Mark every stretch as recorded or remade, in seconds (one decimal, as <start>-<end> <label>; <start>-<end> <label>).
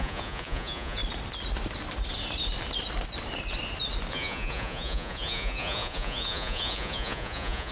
0.0-1.0 remade; 1.0-4.1 recorded; 4.1-7.7 remade